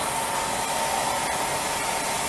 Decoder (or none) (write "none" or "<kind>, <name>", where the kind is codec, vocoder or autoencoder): none